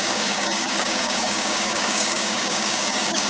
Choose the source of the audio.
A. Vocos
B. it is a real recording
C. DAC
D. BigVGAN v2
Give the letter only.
C